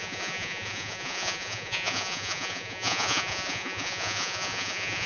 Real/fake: fake